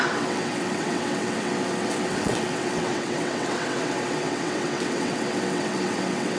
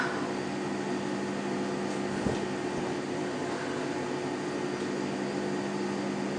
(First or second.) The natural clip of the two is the second